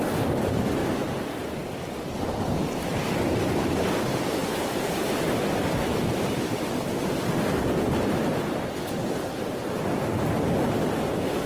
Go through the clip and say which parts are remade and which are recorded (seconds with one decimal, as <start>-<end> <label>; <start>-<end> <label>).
0.0-4.4 recorded; 4.4-7.2 remade; 7.2-11.5 recorded